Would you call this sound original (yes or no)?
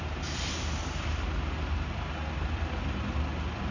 yes